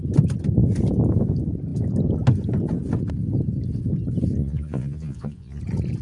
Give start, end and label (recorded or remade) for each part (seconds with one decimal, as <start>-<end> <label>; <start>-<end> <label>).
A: 0.0-4.4 recorded; 4.4-5.6 remade; 5.6-6.0 recorded